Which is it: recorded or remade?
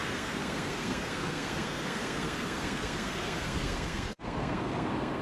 remade